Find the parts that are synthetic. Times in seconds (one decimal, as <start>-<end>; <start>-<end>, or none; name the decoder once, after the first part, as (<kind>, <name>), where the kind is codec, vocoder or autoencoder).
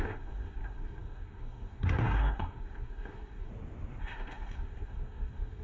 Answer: 0.0-3.5 (codec, SNAC); 4.0-5.6